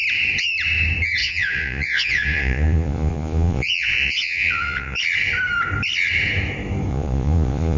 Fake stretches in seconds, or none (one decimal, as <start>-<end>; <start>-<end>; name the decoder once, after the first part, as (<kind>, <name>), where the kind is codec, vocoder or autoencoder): 1.2-5.0 (vocoder, Vocos); 6.9-7.8